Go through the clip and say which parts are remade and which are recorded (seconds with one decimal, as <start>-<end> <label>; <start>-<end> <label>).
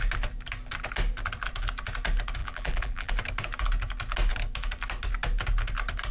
0.0-2.4 recorded; 2.4-3.1 remade; 3.1-6.1 recorded